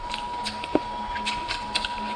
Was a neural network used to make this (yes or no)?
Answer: no